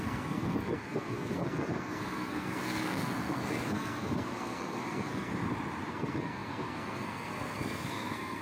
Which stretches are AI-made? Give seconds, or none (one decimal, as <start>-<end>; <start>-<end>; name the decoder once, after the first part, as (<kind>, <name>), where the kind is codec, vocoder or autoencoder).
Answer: 0.0-5.3 (codec, SNAC); 5.9-8.4